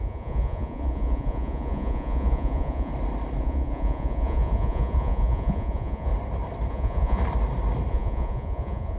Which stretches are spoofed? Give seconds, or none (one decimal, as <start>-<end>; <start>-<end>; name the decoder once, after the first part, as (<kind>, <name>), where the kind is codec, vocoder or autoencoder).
0.0-2.9 (vocoder, Vocos); 3.4-6.1; 6.7-7.2; 7.9-9.0